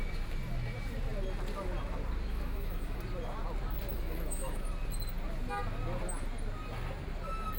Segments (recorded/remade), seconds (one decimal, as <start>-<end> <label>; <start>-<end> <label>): 0.0-2.3 recorded; 2.3-3.0 remade; 3.0-3.9 recorded; 3.9-4.7 remade; 4.7-7.6 recorded